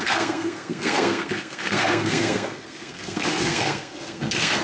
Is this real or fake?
fake